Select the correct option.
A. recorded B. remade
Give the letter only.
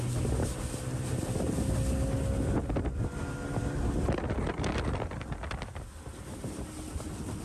A